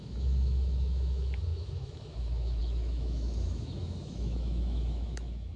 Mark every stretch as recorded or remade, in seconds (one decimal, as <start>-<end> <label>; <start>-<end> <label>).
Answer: 0.0-5.6 remade